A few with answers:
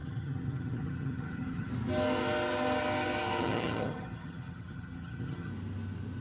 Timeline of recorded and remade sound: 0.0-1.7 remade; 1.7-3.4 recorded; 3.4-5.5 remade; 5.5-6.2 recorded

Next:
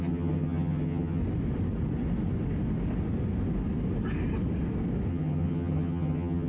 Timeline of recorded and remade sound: 0.0-1.2 remade; 1.2-5.1 recorded; 5.1-6.5 remade

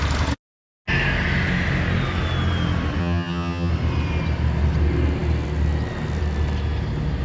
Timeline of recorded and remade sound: 0.0-3.0 recorded; 3.0-3.7 remade; 3.7-7.2 recorded

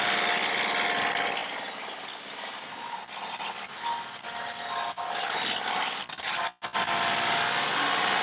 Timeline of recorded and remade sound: 0.0-8.2 recorded

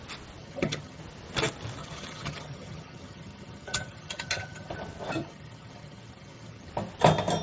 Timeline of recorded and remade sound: 0.0-0.4 recorded; 0.4-1.0 remade; 1.0-1.8 recorded; 1.8-4.7 remade; 4.7-5.2 recorded; 5.2-6.7 remade; 6.7-7.4 recorded

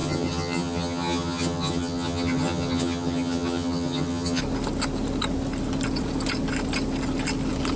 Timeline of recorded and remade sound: 0.0-4.4 remade; 4.4-7.8 recorded